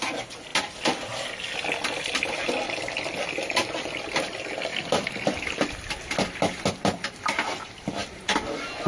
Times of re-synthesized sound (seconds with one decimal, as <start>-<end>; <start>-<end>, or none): none